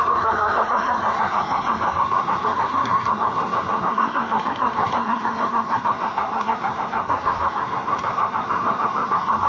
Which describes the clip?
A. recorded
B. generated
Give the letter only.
B